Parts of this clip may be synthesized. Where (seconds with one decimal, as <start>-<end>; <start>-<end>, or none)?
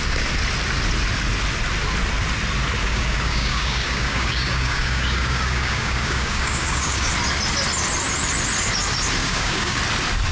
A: 2.8-7.1; 9.2-9.8